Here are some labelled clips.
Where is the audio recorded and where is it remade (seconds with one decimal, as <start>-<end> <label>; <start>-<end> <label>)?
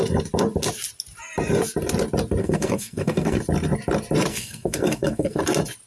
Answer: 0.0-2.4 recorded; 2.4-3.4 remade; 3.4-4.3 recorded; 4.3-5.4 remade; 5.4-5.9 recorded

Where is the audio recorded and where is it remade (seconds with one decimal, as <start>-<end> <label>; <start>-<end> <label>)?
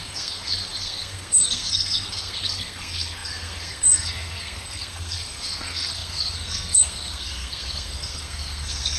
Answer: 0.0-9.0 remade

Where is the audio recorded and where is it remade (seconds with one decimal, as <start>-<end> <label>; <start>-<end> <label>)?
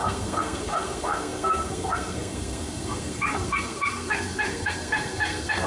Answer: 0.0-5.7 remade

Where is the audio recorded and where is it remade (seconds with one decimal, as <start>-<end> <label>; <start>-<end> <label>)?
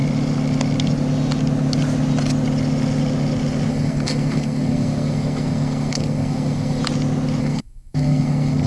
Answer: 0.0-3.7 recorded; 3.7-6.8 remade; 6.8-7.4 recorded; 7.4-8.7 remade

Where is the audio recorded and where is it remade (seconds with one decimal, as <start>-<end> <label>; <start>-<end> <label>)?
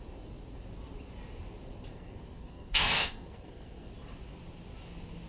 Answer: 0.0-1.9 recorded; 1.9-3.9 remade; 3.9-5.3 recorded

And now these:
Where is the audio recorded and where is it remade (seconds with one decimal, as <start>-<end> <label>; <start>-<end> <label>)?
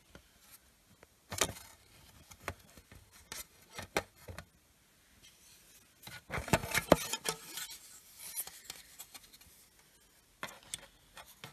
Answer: 0.0-11.5 recorded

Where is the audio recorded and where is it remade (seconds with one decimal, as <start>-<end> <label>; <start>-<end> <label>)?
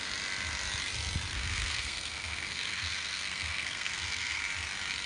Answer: 0.0-1.3 recorded; 1.3-4.4 remade; 4.4-5.1 recorded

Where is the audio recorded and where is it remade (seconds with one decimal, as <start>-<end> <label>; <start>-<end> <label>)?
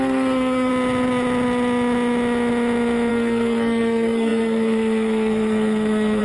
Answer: 0.0-0.7 remade; 0.7-3.1 recorded; 3.1-6.2 remade